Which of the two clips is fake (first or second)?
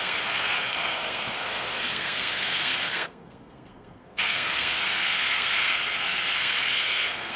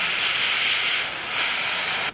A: first